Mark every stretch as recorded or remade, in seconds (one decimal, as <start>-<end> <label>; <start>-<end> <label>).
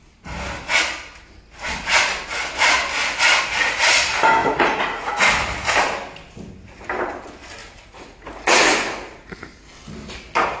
0.0-4.4 recorded; 4.4-5.1 remade; 5.1-7.6 recorded; 7.6-9.4 remade; 9.4-10.6 recorded